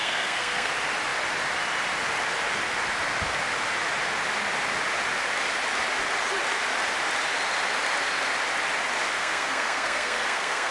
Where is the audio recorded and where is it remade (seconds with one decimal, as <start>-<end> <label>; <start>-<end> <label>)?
0.0-0.7 remade; 0.7-9.2 recorded; 9.2-10.7 remade